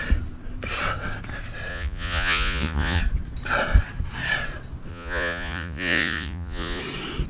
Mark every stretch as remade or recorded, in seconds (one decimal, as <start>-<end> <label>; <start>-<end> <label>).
0.0-1.7 recorded; 1.7-3.0 remade; 3.0-4.9 recorded; 4.9-6.8 remade; 6.8-7.3 recorded